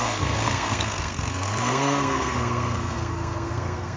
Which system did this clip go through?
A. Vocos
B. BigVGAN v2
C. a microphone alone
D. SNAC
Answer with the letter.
D